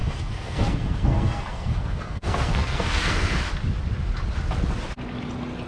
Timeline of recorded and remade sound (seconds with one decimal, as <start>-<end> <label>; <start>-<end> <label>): 0.0-3.4 remade; 3.4-5.7 recorded